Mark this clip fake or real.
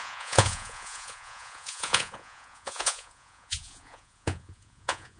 fake